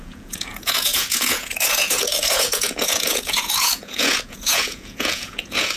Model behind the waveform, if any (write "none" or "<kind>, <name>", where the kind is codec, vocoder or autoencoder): vocoder, Vocos